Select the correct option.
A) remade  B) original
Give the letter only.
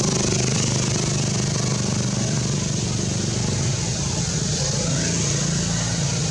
B